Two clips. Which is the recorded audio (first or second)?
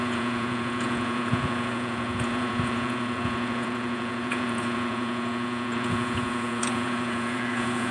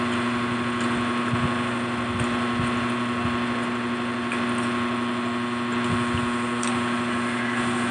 second